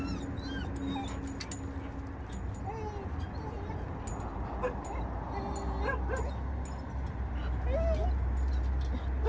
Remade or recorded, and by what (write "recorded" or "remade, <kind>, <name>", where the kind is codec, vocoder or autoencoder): recorded